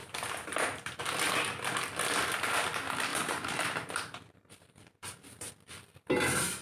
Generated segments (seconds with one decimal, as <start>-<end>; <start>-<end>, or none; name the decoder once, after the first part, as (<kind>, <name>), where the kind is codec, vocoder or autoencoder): 0.0-1.0 (vocoder, BigVGAN v2); 3.1-5.5

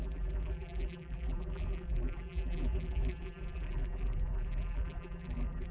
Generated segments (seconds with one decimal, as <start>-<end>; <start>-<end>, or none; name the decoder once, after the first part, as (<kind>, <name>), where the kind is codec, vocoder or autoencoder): 0.0-5.7 (vocoder, BigVGAN v2)

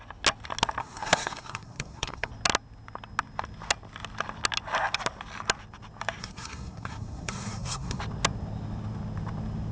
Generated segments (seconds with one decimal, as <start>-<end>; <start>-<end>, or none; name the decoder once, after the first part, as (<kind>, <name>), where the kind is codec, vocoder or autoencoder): 0.8-2.3 (codec, SNAC); 6.2-8.0